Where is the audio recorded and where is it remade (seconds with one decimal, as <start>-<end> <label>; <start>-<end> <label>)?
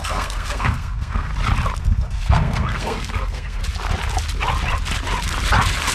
0.0-1.3 remade; 1.3-1.8 recorded; 1.8-3.6 remade; 3.6-5.9 recorded